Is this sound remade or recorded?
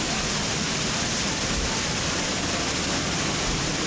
recorded